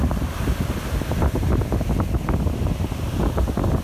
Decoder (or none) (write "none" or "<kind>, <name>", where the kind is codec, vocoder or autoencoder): none